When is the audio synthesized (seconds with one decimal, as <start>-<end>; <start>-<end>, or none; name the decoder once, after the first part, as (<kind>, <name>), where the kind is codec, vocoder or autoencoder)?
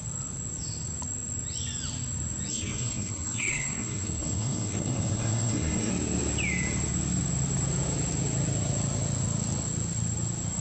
2.5-5.9 (codec, SNAC)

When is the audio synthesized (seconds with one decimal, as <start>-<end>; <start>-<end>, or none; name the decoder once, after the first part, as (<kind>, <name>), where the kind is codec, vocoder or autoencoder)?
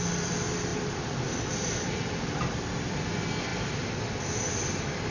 0.7-3.1 (vocoder, BigVGAN v2); 3.5-4.2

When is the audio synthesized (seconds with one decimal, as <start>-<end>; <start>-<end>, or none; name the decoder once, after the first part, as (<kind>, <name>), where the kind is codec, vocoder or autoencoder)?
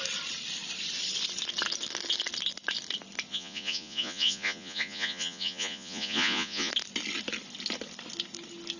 3.3-6.7 (vocoder, Vocos)